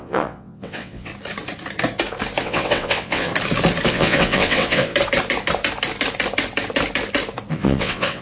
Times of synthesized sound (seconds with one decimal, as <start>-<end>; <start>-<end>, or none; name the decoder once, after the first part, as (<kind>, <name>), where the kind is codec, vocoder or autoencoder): 0.0-1.1 (vocoder, WaveNeXt); 2.4-3.3; 3.9-4.9; 7.5-8.2